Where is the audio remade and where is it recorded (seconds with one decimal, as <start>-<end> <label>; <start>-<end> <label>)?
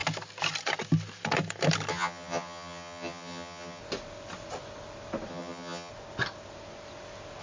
0.0-1.9 recorded; 1.9-3.8 remade; 3.8-5.3 recorded; 5.3-5.9 remade; 5.9-7.4 recorded